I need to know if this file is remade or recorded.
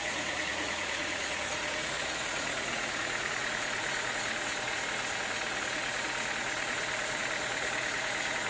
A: remade